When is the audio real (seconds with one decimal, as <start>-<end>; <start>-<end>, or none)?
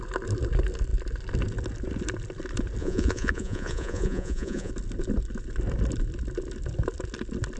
0.0-2.8; 4.7-7.6